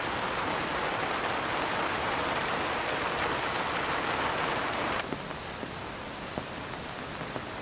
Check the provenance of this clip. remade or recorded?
recorded